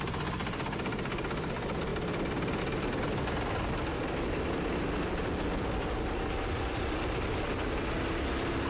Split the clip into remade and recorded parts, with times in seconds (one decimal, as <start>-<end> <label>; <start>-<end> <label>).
0.0-8.7 recorded